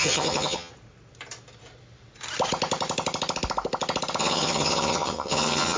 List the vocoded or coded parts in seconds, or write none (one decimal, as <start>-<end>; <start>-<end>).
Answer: 0.0-0.7; 4.2-5.8